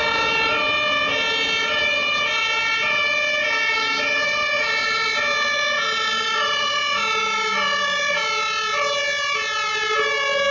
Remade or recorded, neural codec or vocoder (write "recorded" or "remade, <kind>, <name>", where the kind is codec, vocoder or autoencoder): recorded